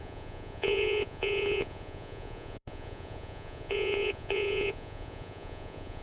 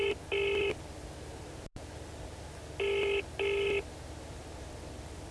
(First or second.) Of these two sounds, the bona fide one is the second